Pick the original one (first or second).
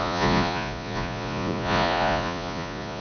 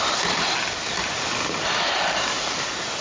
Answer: second